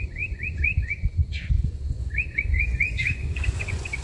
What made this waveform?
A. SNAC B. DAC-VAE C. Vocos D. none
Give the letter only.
C